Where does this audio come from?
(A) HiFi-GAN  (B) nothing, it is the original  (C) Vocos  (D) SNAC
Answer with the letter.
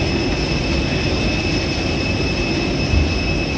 B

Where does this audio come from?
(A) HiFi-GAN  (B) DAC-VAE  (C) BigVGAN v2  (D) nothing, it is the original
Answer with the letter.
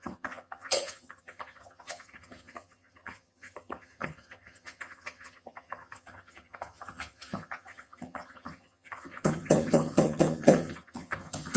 A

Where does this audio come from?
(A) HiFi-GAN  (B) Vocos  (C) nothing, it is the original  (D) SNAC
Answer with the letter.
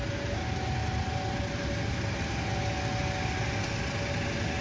C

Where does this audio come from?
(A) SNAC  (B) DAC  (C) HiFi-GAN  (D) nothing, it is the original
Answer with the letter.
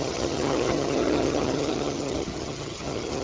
C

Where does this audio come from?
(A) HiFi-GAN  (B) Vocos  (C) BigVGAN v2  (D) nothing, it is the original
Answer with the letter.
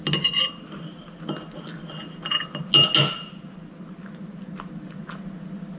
D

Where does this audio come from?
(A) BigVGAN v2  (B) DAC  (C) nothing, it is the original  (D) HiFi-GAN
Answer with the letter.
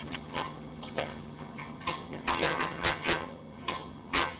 D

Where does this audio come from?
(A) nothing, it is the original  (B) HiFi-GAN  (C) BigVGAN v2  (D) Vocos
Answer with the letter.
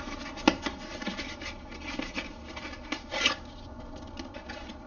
A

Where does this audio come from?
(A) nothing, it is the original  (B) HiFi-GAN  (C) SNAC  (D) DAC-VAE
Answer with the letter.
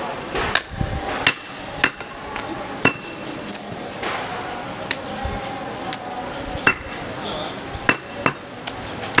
A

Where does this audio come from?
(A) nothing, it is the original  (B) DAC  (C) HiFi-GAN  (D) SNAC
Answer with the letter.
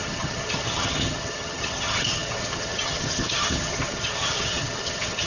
C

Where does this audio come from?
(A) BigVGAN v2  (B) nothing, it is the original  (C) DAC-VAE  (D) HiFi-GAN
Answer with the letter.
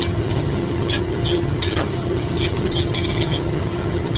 D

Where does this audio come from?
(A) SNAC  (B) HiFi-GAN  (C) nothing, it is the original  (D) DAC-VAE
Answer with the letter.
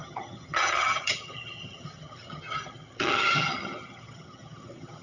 B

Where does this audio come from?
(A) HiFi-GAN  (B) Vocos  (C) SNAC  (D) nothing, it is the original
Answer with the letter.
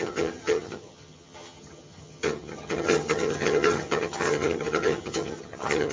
A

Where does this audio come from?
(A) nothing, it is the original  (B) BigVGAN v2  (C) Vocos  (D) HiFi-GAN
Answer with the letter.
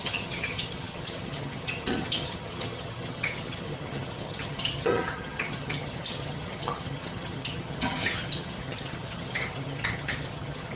D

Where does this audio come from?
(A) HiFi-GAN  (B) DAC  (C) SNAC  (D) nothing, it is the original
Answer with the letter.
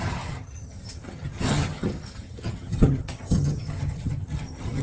A